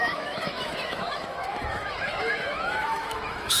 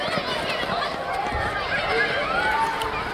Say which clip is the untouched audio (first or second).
second